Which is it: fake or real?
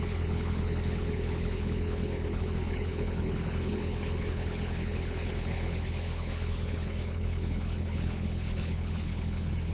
fake